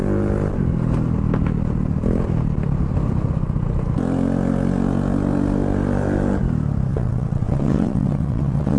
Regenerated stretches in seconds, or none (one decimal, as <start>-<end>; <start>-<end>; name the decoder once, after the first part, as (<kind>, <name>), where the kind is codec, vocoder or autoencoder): 6.9-8.8 (vocoder, WaveNeXt)